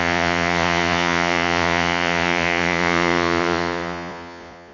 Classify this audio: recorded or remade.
remade